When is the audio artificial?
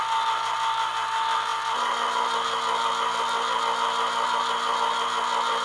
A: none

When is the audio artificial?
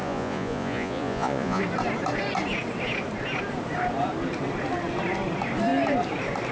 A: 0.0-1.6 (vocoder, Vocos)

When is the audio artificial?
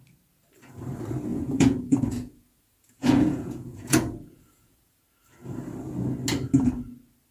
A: 1.3-5.0 (vocoder, Vocos)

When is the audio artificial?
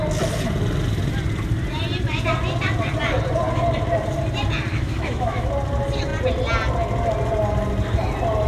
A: 4.7-5.5 (autoencoder, DAC-VAE)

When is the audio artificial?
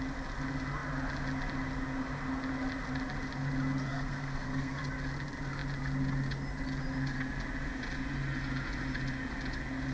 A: 3.9-4.8 (codec, SNAC)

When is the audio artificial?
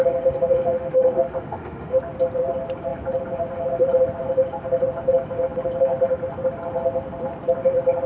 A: 0.6-2.0 (autoencoder, DAC-VAE)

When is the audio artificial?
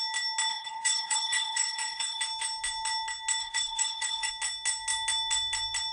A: 0.5-2.2 (codec, HILCodec); 3.4-4.3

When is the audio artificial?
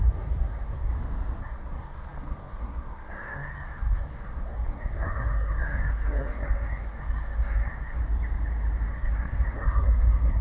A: 0.0-0.9 (codec, SNAC); 1.4-8.0; 8.9-10.4